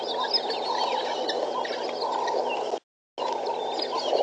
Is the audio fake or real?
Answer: real